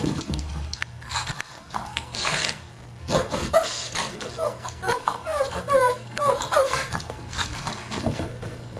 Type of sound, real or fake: fake